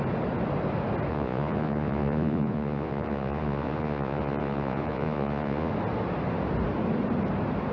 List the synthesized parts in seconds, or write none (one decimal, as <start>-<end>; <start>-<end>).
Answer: 1.1-5.7